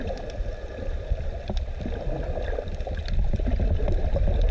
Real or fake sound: fake